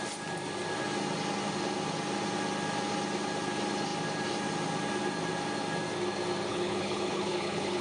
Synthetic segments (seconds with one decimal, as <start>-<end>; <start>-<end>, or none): 6.5-7.8